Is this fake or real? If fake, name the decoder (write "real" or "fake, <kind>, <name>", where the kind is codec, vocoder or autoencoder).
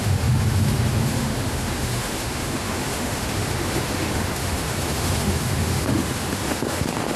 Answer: fake, autoencoder, DAC-VAE